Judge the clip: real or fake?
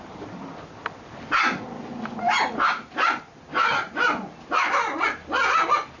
real